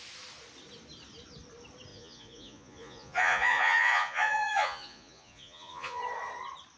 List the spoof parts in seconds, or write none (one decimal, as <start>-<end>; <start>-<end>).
1.9-6.0

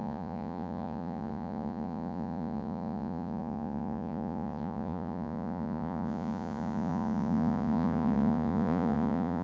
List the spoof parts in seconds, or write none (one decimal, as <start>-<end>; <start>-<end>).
0.0-9.4

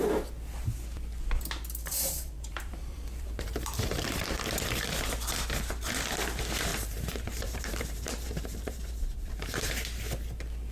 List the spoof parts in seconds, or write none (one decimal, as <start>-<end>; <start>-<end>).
1.9-4.2; 6.7-9.7

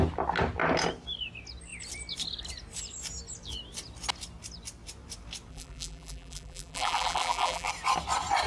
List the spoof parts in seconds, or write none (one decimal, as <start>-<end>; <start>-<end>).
5.5-7.7

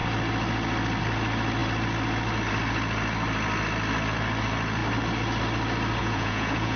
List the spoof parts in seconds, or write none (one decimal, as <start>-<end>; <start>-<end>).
6.0-6.8

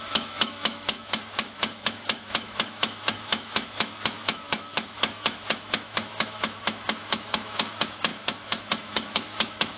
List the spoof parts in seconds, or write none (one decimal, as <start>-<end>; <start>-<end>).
0.0-9.8